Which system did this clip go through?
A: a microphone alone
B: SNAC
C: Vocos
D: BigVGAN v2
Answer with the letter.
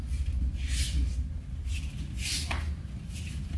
A